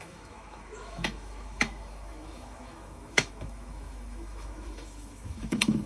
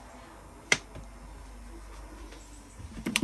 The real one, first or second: second